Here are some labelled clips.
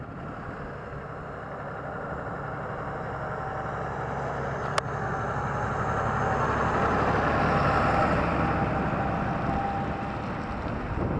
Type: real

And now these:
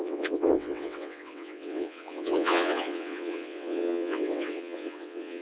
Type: fake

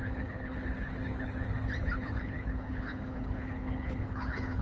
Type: fake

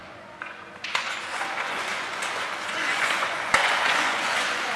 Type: fake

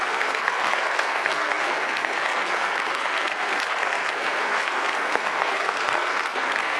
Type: fake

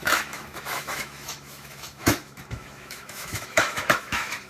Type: fake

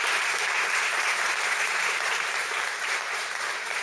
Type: fake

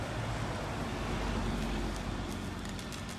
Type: real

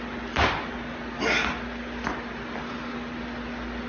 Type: real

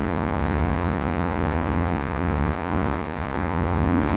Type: fake